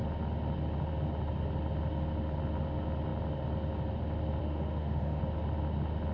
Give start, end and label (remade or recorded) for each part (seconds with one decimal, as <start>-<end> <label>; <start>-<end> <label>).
0.0-4.4 recorded; 4.4-5.2 remade; 5.2-6.1 recorded